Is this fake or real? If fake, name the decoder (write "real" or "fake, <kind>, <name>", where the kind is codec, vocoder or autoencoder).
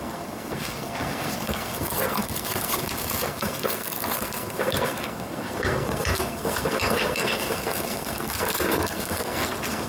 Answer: fake, codec, SNAC